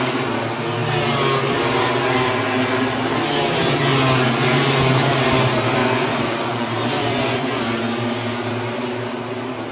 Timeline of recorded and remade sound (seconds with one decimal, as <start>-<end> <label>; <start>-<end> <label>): 0.0-5.8 recorded; 5.8-7.6 remade; 7.6-9.7 recorded